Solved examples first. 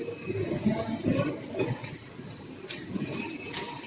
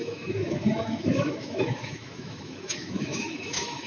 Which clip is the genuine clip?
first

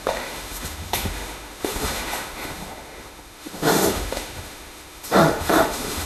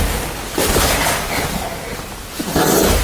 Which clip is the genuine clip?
second